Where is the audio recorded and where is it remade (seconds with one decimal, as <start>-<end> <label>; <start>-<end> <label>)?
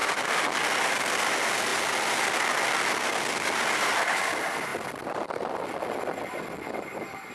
0.0-7.3 recorded